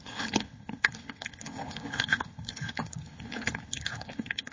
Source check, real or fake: fake